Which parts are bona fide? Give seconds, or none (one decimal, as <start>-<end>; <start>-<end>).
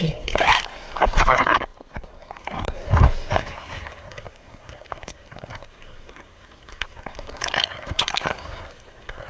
none